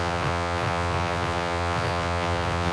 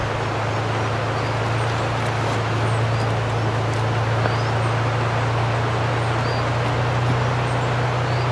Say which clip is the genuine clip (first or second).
second